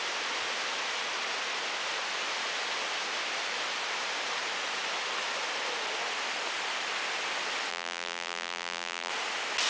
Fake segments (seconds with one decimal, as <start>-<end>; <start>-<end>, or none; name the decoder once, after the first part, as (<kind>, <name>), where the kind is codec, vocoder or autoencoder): 7.7-9.1 (vocoder, BigVGAN v2)